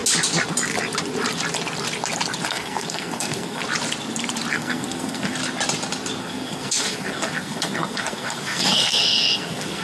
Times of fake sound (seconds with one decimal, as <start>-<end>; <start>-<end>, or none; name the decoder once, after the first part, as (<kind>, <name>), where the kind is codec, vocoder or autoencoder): 2.5-3.6 (codec, SNAC); 4.5-5.4; 6.2-9.8